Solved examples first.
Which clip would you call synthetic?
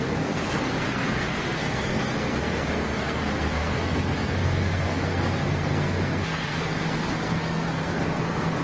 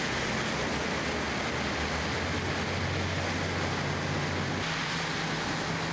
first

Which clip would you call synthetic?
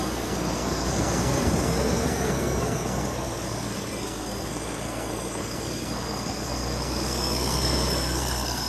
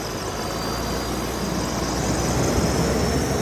first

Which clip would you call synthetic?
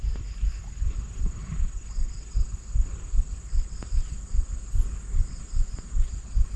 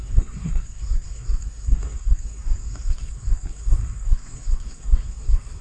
second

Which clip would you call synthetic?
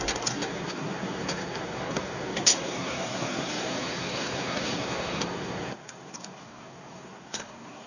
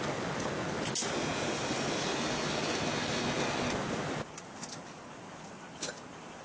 first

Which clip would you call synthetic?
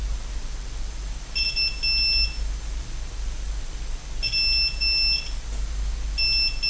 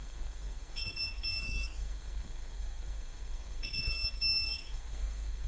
second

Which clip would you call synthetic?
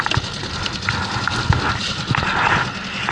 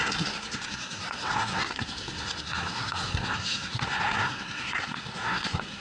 second